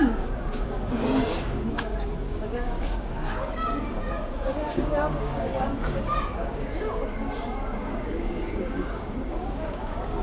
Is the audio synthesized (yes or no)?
yes